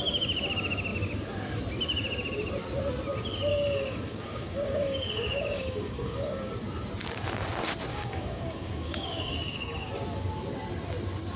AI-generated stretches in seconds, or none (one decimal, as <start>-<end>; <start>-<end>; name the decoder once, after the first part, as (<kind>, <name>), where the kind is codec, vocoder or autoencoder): 3.5-6.5 (codec, DAC); 7.9-9.9